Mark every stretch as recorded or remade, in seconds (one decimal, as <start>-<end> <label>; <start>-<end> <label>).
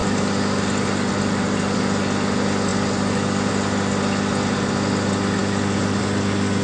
0.0-2.7 recorded; 2.7-3.5 remade; 3.5-5.4 recorded; 5.4-6.0 remade; 6.0-6.6 recorded